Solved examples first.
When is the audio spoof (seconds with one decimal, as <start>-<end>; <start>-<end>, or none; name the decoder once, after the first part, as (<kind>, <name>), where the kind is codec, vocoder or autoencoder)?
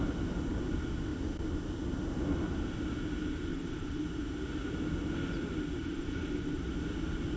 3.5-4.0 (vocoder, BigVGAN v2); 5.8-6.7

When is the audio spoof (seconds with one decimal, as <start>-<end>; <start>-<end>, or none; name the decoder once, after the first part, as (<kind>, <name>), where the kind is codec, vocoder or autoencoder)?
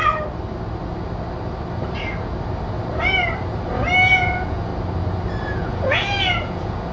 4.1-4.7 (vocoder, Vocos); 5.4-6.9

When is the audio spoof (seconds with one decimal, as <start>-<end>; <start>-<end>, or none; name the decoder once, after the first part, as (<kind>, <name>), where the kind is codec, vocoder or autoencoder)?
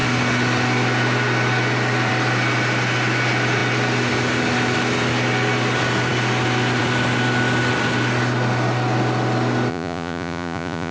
9.7-10.9 (vocoder, Vocos)